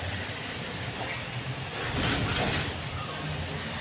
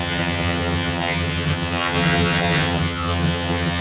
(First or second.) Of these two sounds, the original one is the first